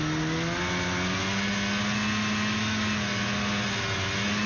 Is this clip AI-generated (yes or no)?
no